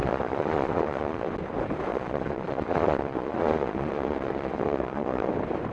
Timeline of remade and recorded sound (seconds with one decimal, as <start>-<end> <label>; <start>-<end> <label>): 0.0-1.3 remade; 1.3-1.9 recorded; 1.9-5.3 remade; 5.3-5.7 recorded